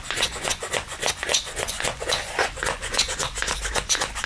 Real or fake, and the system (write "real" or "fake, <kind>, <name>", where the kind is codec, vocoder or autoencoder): fake, vocoder, Vocos